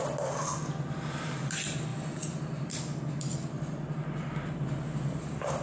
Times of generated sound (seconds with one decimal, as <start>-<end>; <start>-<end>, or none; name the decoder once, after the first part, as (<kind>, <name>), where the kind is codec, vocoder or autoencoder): none